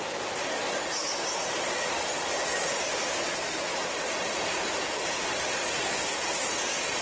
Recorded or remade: recorded